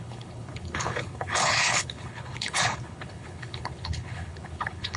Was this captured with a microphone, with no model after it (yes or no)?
no